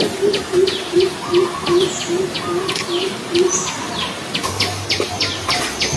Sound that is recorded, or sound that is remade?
recorded